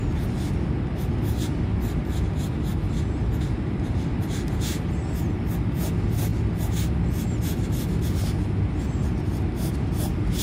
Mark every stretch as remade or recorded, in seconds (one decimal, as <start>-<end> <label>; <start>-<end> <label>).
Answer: 0.0-2.7 recorded; 2.7-4.4 remade; 4.4-10.4 recorded